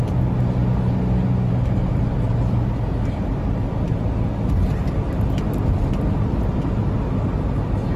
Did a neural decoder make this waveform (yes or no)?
no